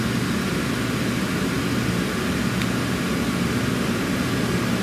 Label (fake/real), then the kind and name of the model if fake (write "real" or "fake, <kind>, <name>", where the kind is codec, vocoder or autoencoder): real